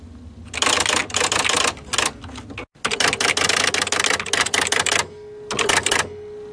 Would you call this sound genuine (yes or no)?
yes